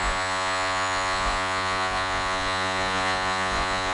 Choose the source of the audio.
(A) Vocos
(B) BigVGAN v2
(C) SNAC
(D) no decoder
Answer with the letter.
A